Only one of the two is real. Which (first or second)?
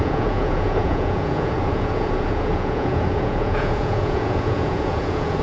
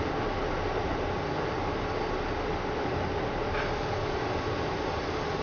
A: second